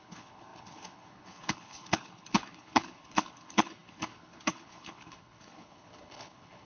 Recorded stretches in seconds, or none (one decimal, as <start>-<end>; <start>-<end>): none

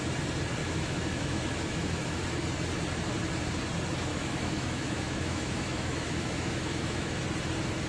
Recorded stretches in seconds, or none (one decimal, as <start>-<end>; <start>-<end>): 0.0-0.6; 2.2-4.1; 7.2-7.9

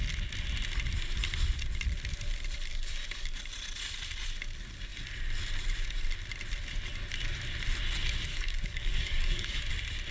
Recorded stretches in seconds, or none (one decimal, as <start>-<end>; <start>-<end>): 0.0-2.7; 3.4-8.3; 9.7-10.1

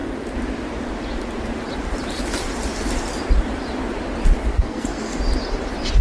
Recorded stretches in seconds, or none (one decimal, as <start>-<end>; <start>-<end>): 0.0-4.5; 5.2-6.0

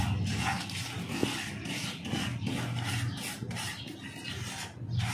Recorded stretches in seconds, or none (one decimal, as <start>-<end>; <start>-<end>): 0.0-5.1